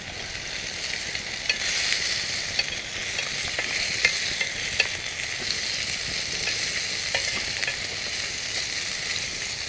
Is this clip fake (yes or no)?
no